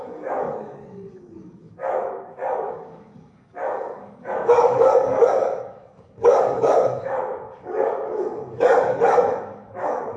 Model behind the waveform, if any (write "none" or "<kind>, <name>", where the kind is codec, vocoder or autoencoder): codec, DAC